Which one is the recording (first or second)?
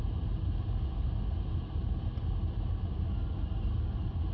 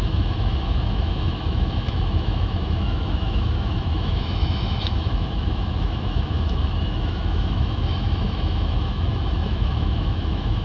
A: first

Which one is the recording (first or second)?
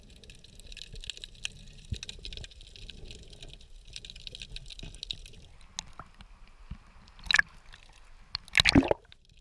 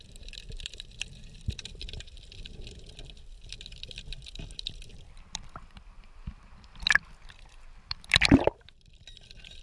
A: first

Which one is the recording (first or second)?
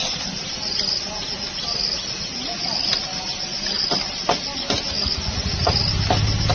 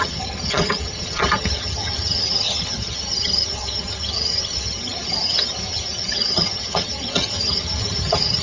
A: first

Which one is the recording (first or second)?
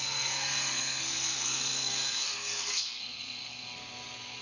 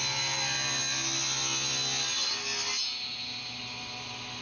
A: second